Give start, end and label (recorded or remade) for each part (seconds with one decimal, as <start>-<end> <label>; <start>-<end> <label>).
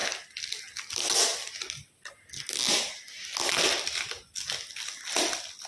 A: 0.0-5.7 recorded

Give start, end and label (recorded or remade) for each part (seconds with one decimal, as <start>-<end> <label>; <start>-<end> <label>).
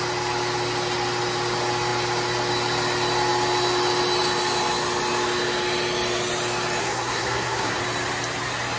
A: 0.0-6.8 recorded; 6.8-7.8 remade; 7.8-8.8 recorded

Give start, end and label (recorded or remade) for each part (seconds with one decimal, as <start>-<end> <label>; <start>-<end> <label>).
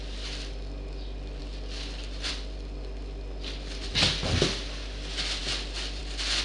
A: 0.0-6.4 recorded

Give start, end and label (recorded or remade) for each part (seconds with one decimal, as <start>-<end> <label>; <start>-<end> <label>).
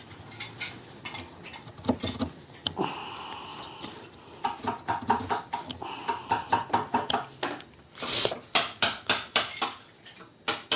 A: 0.0-10.8 recorded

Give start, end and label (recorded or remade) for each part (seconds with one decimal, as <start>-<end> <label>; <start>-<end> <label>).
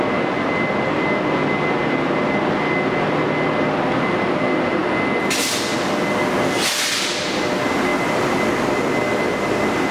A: 0.0-9.9 recorded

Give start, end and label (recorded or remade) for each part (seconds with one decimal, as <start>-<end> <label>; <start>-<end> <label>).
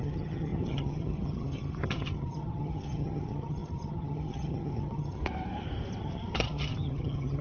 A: 0.0-5.2 remade; 5.2-6.0 recorded; 6.0-7.4 remade